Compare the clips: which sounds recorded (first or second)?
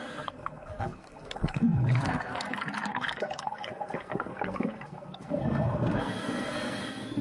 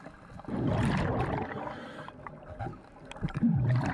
second